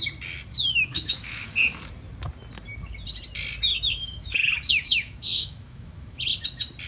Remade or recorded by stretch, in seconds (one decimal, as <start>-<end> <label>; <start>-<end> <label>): 0.0-0.5 recorded; 0.5-1.5 remade; 1.5-3.7 recorded; 3.7-6.3 remade; 6.3-6.9 recorded